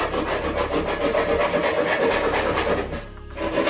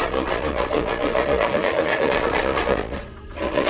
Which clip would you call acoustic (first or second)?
first